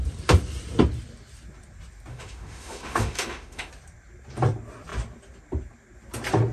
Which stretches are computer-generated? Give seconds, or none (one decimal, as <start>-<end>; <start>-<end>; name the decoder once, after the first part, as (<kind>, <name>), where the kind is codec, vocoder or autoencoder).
2.1-3.7 (autoencoder, DAC-VAE)